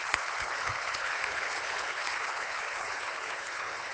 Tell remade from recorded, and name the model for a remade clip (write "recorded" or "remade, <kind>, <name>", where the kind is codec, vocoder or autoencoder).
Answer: remade, codec, HILCodec